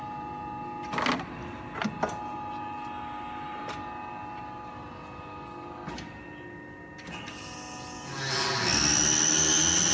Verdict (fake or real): real